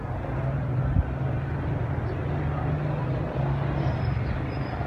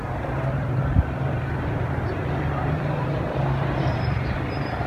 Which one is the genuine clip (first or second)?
first